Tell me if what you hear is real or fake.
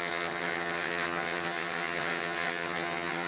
fake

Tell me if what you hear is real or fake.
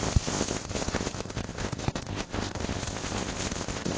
fake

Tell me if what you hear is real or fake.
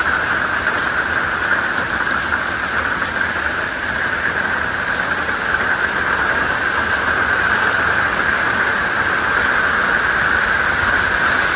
real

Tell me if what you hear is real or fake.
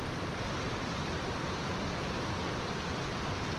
real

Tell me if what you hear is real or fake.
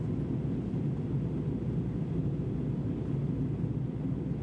real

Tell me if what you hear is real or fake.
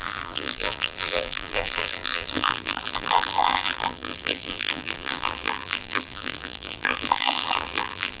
fake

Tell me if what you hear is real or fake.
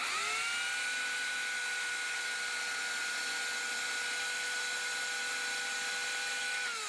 real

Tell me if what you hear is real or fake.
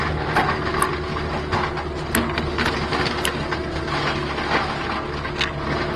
real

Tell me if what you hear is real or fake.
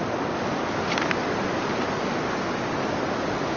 real